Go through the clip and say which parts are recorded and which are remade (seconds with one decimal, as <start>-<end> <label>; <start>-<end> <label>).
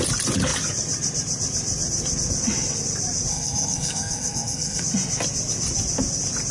0.0-3.3 recorded; 3.3-4.8 remade; 4.8-6.5 recorded